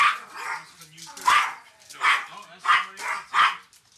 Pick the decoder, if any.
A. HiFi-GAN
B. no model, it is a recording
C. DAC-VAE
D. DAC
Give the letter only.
B